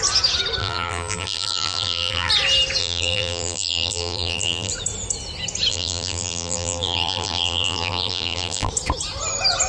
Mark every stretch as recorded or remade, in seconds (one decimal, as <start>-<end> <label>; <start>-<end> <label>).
0.0-0.6 recorded; 0.6-2.3 remade; 2.3-2.8 recorded; 2.8-4.7 remade; 4.7-5.7 recorded; 5.7-8.7 remade; 8.7-9.7 recorded